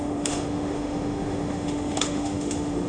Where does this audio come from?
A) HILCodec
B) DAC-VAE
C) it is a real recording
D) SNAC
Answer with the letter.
B